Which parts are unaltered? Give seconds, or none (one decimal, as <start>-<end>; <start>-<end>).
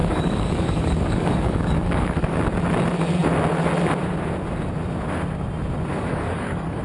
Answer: 2.4-5.9